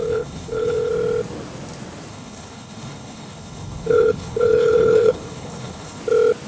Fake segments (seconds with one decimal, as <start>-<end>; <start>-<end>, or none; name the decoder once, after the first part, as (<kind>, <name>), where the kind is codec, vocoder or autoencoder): 0.0-0.9 (codec, HILCodec); 2.1-6.0